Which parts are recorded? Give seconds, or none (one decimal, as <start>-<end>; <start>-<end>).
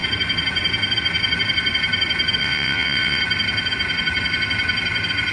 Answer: 0.0-2.4; 3.2-5.3